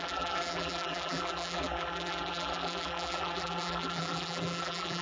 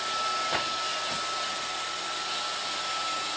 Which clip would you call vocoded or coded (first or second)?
first